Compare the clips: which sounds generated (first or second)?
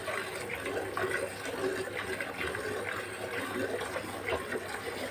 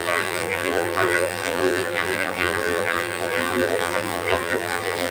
second